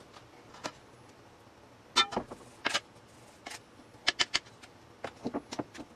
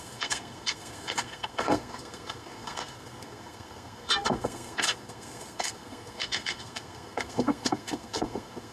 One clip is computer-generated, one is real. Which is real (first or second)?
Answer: first